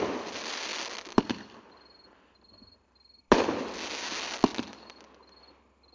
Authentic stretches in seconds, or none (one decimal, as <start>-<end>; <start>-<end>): 0.0-5.9